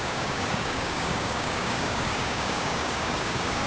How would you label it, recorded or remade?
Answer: remade